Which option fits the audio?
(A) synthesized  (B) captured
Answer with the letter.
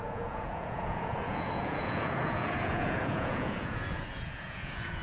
A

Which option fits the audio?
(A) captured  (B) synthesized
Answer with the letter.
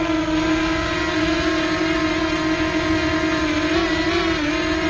A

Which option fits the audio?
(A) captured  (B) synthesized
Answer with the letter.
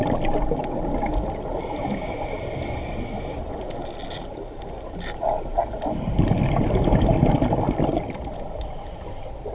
A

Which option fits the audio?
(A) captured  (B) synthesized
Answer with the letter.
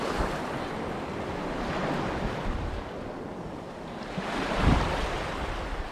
A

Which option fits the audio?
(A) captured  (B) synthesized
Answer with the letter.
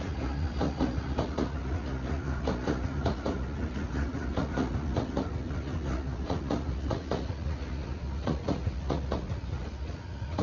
B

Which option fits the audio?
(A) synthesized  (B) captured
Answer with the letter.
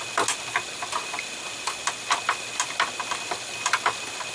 B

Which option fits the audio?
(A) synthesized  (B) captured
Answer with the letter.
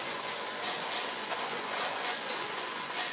A